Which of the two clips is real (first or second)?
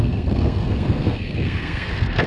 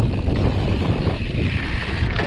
second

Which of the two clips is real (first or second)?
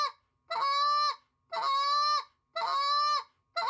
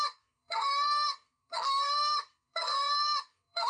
first